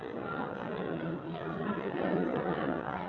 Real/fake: fake